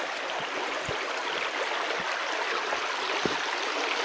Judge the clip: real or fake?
real